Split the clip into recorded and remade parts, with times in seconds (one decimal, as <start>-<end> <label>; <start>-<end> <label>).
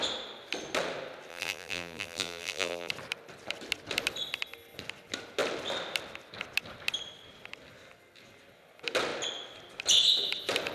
0.0-1.3 recorded; 1.3-2.9 remade; 2.9-10.7 recorded